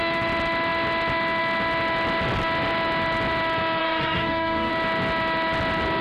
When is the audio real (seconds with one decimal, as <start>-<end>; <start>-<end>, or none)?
0.0-3.8; 4.7-6.0